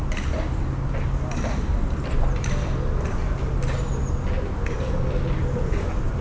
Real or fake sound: real